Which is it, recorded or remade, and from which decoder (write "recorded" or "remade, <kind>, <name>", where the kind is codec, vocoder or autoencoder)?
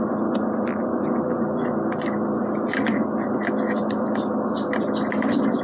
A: recorded